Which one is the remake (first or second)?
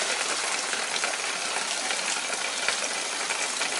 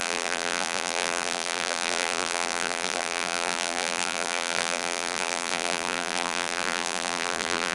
second